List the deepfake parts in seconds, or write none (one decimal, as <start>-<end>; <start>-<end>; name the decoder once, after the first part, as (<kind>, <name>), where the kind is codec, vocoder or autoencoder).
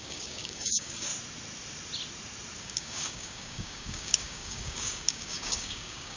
0.0-1.1 (codec, DAC); 2.6-6.2